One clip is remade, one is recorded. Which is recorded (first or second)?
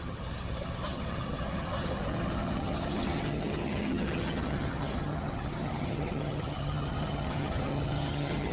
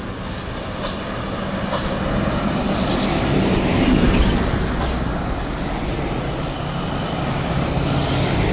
second